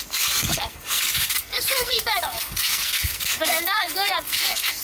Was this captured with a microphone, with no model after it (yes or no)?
no